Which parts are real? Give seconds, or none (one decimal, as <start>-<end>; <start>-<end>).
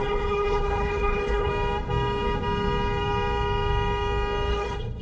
1.5-4.5